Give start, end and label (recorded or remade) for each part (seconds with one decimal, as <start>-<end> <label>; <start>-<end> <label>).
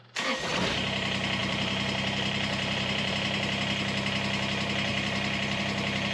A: 0.0-1.4 recorded; 1.4-3.1 remade; 3.1-4.9 recorded; 4.9-5.6 remade; 5.6-6.1 recorded